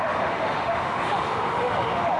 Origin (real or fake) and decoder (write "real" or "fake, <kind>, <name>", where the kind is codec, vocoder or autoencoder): fake, autoencoder, DAC-VAE